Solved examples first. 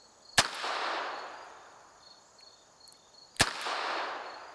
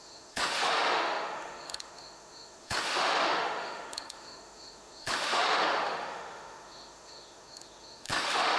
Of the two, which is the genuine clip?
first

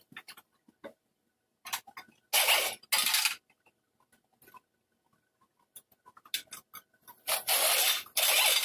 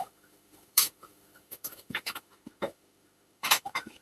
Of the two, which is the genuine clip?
first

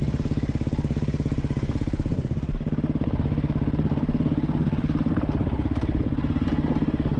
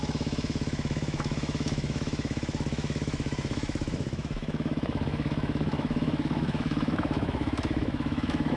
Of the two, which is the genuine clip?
first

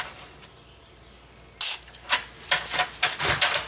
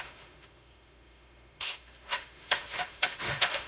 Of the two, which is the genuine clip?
first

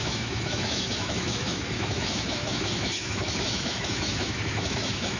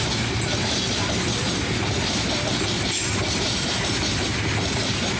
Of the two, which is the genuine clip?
second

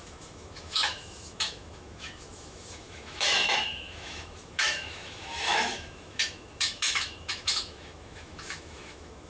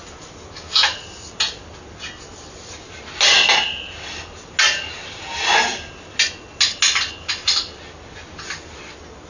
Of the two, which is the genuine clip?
second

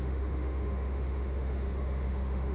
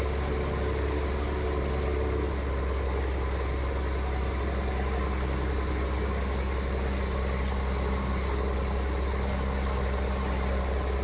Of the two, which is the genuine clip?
second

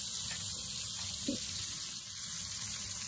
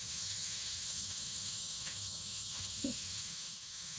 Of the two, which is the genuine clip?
first